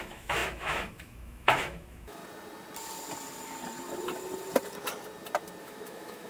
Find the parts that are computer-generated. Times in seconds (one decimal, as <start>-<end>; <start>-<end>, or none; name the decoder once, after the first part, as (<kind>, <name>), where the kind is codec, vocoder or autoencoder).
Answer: 0.0-2.2 (autoencoder, DAC-VAE); 5.6-6.3